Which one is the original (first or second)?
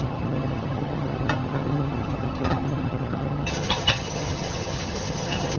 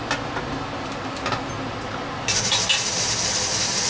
second